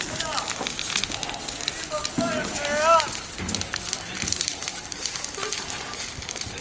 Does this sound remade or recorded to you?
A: recorded